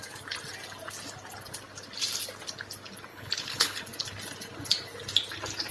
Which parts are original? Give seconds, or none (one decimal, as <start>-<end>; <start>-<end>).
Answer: 0.0-3.1; 3.8-5.7